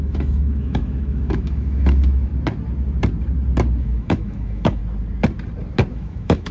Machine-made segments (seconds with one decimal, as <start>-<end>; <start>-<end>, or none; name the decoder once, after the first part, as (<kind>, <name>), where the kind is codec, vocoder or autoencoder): 0.0-2.3 (autoencoder, DAC-VAE); 3.8-4.8; 5.9-6.5